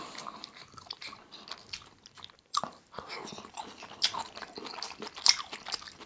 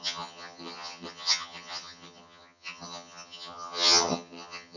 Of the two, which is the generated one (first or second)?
second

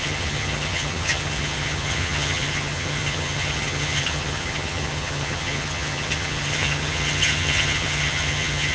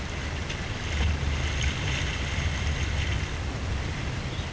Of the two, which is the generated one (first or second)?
first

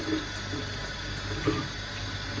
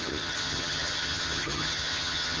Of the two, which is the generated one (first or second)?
second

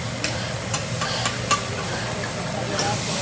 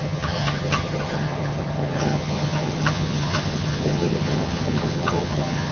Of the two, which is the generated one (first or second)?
second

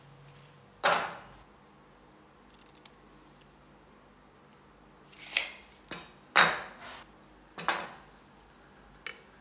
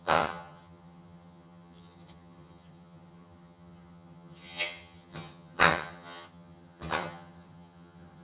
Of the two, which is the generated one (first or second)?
second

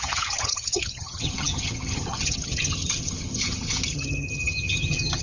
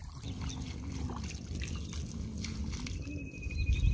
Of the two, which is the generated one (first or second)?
first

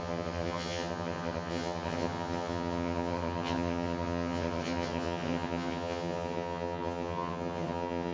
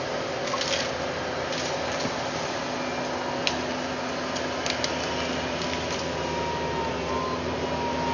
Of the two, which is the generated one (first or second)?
first